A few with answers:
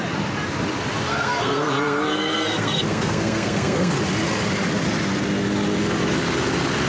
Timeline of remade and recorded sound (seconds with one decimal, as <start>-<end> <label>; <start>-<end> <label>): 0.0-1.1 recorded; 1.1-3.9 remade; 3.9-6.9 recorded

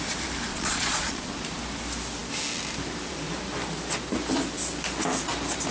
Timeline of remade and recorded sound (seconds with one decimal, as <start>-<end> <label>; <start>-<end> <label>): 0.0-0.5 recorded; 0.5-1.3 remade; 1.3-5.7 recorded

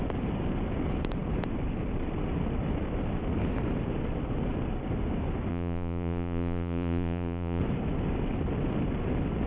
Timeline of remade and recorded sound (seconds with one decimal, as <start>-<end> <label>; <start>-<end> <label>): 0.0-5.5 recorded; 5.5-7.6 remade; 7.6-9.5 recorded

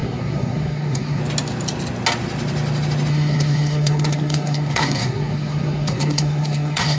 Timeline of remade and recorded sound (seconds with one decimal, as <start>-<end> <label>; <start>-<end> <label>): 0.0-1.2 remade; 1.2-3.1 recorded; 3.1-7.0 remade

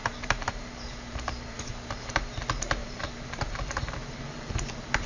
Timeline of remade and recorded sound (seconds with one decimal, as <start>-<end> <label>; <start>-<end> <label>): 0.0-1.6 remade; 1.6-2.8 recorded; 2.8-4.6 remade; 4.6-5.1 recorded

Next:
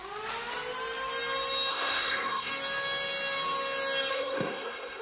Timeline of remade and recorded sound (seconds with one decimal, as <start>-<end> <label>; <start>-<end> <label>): 0.0-1.7 recorded; 1.7-2.5 remade; 2.5-4.1 recorded; 4.1-5.0 remade

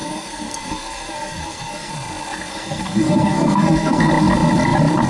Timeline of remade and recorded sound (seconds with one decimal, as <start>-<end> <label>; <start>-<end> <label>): 0.0-1.9 remade; 1.9-2.5 recorded; 2.5-4.1 remade; 4.1-5.1 recorded

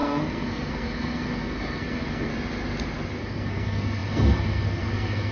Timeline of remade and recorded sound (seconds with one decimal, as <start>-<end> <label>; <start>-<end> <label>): 0.0-2.3 remade; 2.3-3.2 recorded; 3.2-5.3 remade